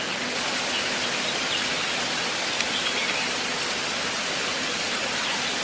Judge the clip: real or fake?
real